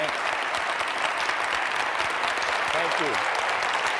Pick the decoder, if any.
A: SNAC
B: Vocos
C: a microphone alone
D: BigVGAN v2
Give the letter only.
C